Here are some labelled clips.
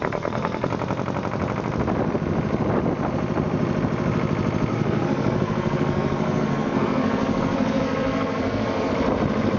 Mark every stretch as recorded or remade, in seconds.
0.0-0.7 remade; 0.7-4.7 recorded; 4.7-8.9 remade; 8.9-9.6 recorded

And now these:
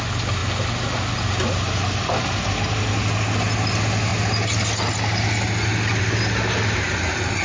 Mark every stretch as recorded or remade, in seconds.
0.0-7.4 recorded

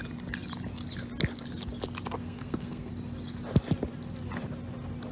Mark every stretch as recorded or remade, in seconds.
0.0-2.2 recorded; 2.2-2.9 remade; 2.9-5.1 recorded

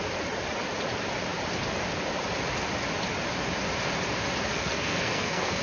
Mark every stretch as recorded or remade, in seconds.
0.0-4.5 recorded; 4.5-5.6 remade

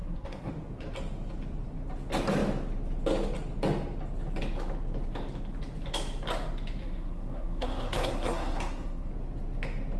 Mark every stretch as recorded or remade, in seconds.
0.0-0.5 remade; 0.5-6.8 recorded; 6.8-9.1 remade; 9.1-10.0 recorded